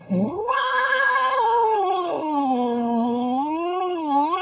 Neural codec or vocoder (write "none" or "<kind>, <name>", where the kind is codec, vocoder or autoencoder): codec, SNAC